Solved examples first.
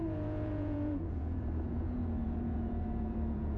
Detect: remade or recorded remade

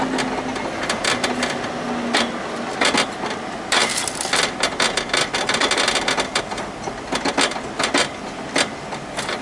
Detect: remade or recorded recorded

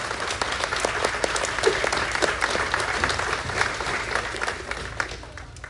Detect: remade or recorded recorded